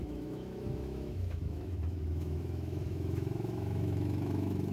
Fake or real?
fake